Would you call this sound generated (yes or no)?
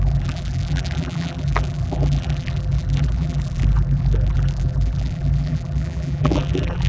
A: yes